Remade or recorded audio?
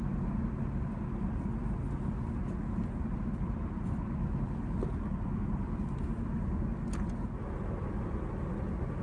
recorded